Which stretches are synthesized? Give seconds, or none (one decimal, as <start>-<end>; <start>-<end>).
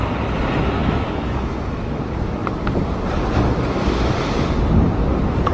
0.8-2.0